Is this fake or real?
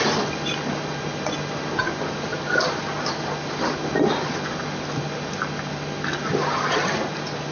real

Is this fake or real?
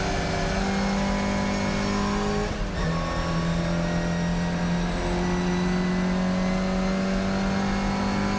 real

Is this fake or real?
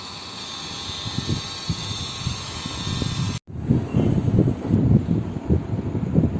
real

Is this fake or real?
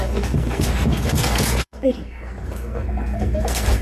fake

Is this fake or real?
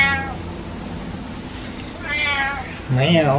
real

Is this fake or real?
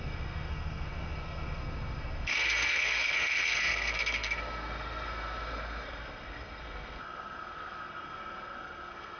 fake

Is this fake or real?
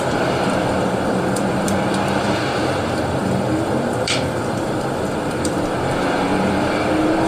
fake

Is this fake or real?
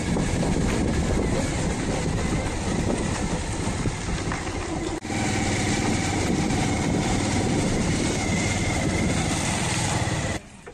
fake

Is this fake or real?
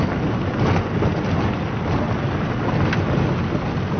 real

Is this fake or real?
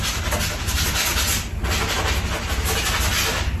real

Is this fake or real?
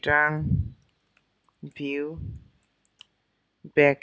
real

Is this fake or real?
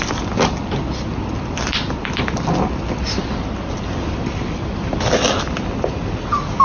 real